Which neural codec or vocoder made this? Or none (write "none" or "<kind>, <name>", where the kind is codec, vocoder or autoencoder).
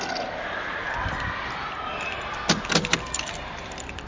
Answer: none